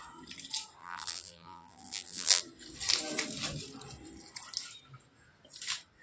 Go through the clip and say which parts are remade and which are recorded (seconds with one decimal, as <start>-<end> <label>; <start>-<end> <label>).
0.0-0.8 recorded; 0.8-2.4 remade; 2.4-6.0 recorded

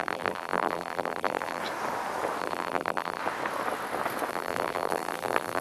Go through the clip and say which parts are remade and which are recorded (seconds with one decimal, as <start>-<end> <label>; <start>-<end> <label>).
0.0-1.6 remade; 1.6-2.4 recorded; 2.4-3.2 remade; 3.2-4.3 recorded; 4.3-5.6 remade

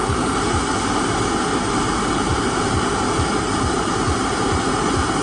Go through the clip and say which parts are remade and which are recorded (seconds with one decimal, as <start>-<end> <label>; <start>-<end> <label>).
0.0-5.2 recorded

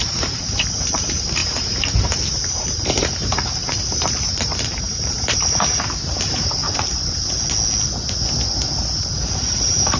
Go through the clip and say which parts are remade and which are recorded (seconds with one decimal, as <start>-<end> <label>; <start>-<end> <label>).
0.0-6.6 remade; 6.6-9.3 recorded; 9.3-10.0 remade

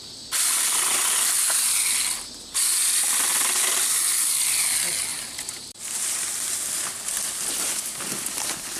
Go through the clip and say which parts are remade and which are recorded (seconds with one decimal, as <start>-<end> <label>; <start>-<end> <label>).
0.0-5.1 recorded; 5.1-5.8 remade; 5.8-8.8 recorded

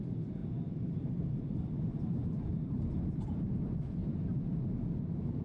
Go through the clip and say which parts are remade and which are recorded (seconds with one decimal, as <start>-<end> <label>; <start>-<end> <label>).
0.0-0.4 recorded; 0.4-3.6 remade; 3.6-4.0 recorded; 4.0-4.6 remade; 4.6-5.4 recorded

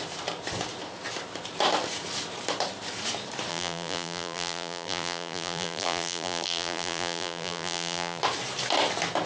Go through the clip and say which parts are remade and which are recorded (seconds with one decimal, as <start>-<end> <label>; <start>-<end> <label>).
0.0-3.5 recorded; 3.5-8.2 remade; 8.2-9.3 recorded